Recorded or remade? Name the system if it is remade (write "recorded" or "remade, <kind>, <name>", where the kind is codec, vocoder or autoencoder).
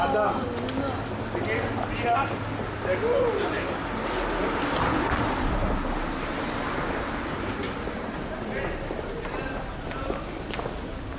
recorded